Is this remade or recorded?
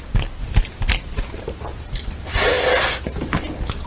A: recorded